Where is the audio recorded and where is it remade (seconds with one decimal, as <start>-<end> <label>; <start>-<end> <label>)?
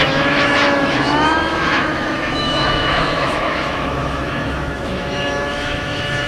0.0-6.3 remade